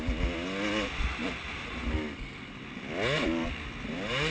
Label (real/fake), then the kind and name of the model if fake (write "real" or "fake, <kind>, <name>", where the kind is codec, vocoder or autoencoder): real